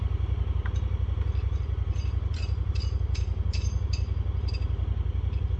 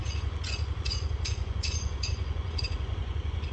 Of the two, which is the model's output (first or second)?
second